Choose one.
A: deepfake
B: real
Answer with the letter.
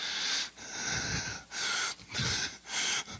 B